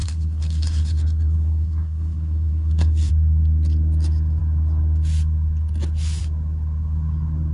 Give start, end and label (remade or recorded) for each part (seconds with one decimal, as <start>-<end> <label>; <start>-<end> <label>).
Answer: 0.0-3.1 remade; 3.1-7.5 recorded